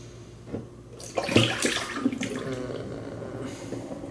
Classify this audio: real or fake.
real